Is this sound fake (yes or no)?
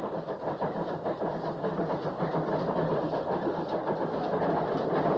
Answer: no